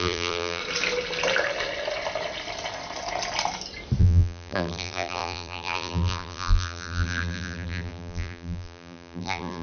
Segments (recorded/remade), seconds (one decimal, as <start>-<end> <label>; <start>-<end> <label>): 0.0-0.6 remade; 0.6-4.0 recorded; 4.0-9.6 remade